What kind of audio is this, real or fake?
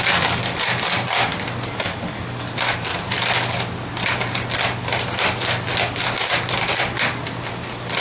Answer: real